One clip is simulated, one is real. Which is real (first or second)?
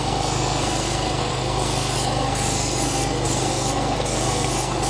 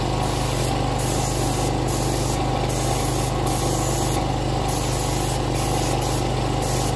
second